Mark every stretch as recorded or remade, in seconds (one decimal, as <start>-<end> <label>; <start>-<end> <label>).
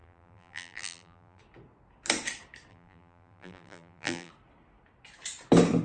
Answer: 0.0-1.4 remade; 1.4-2.7 recorded; 2.7-4.3 remade; 4.3-5.8 recorded